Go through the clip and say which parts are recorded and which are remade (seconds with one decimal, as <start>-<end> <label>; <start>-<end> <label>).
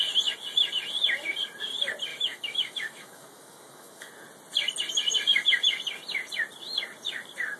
0.0-2.1 recorded; 2.1-4.1 remade; 4.1-7.6 recorded